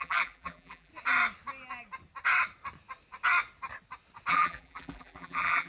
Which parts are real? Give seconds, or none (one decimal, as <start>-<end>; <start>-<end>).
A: 0.9-4.3

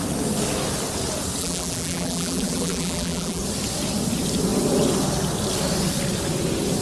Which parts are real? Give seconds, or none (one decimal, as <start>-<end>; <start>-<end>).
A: 0.0-1.4; 3.4-6.8

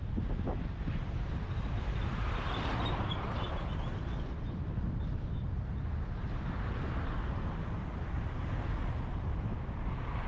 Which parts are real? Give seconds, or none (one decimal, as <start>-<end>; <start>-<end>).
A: 0.0-1.9; 4.2-7.8; 8.4-10.3

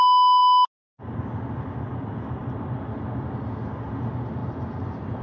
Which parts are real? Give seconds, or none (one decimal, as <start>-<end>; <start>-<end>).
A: 0.0-2.4; 3.3-4.4

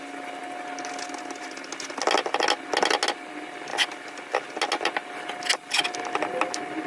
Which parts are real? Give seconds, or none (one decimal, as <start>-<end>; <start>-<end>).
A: 0.0-6.9

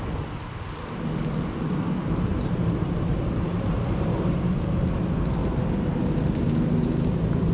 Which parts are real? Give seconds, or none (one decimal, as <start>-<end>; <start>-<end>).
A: 0.0-2.3; 5.0-5.4; 6.0-7.5

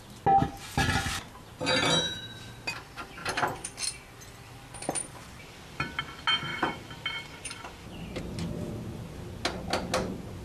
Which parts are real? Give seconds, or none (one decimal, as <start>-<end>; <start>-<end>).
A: 0.0-3.2; 6.0-6.5; 8.2-10.4